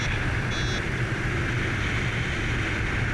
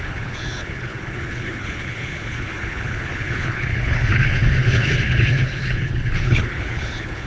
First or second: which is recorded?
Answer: first